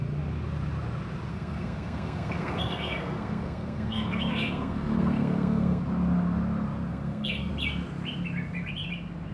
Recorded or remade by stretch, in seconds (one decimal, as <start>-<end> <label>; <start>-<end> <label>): 0.0-1.3 recorded; 1.3-5.8 remade; 5.8-6.9 recorded; 6.9-7.5 remade; 7.5-9.3 recorded

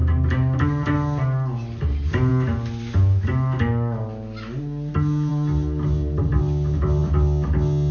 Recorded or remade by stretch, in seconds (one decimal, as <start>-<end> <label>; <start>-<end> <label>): 0.0-7.9 recorded

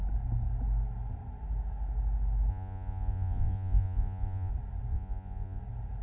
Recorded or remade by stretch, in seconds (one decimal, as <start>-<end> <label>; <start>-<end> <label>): 0.0-2.5 recorded; 2.5-4.5 remade; 4.5-4.9 recorded; 4.9-5.6 remade; 5.6-6.0 recorded

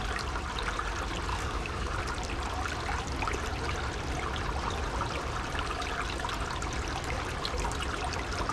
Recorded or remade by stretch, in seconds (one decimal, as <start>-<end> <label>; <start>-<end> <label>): 0.0-1.3 recorded; 1.3-2.0 remade; 2.0-8.5 recorded

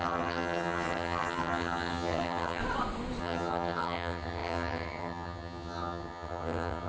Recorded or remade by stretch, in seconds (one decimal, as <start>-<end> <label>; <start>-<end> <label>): 0.0-2.6 remade; 2.6-3.2 recorded; 3.2-6.9 remade

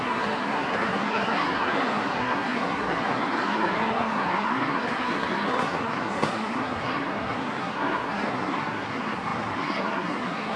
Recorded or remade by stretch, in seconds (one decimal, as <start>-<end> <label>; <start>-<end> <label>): 0.0-10.6 remade

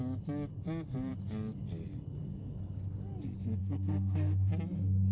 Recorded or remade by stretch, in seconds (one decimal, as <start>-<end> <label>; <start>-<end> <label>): 0.0-3.6 recorded; 3.6-4.5 remade; 4.5-5.1 recorded